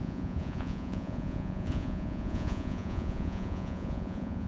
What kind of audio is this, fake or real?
fake